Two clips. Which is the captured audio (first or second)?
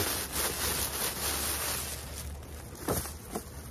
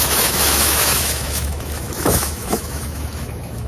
first